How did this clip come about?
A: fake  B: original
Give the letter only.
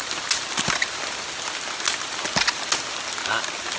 B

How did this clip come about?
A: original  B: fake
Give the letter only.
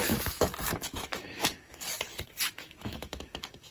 B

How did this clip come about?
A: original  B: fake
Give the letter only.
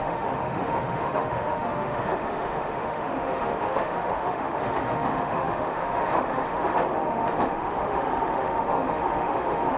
B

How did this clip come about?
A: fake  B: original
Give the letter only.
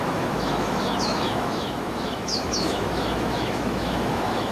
A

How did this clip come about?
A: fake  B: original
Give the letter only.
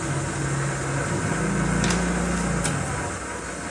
B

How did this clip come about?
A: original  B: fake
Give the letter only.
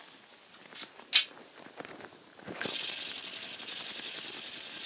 A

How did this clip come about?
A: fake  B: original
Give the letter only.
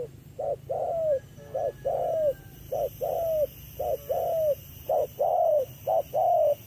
B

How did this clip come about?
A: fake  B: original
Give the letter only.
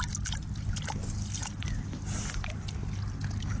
B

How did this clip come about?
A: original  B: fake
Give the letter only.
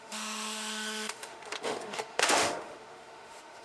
B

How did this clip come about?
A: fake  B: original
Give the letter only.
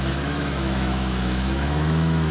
A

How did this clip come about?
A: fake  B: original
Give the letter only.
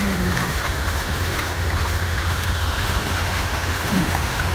A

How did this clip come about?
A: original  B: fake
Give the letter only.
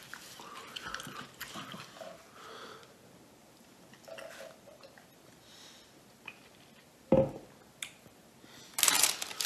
A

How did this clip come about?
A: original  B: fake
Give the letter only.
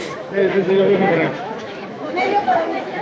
B